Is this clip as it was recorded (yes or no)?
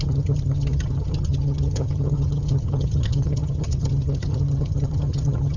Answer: no